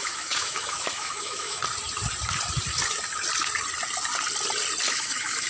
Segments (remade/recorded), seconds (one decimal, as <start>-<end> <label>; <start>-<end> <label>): 0.0-1.6 remade; 1.6-4.9 recorded; 4.9-5.5 remade